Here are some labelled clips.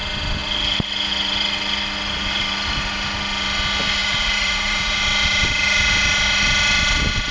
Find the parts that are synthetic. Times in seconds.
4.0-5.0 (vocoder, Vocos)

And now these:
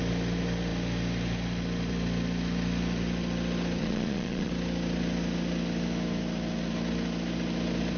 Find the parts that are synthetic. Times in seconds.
3.8-4.5 (vocoder, Vocos)

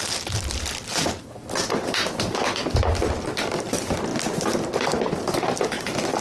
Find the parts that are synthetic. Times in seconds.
none

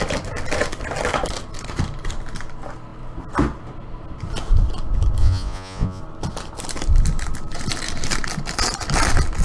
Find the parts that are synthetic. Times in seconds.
5.2-6.0 (vocoder, Vocos)